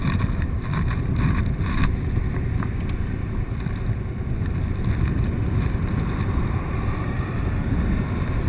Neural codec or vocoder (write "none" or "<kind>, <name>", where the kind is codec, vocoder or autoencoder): none